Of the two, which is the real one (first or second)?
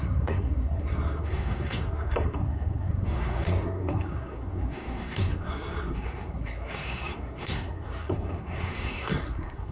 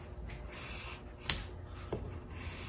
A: second